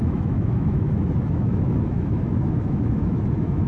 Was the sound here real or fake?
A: fake